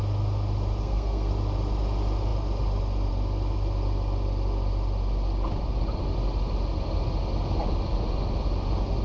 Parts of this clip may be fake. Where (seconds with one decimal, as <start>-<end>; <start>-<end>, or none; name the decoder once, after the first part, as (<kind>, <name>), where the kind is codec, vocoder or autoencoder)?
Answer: 0.8-1.3 (codec, SNAC)